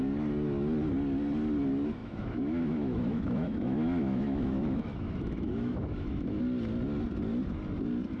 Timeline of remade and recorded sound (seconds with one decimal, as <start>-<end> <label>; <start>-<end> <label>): 0.0-2.0 recorded; 2.0-6.4 remade; 6.4-8.2 recorded